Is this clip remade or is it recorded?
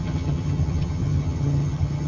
remade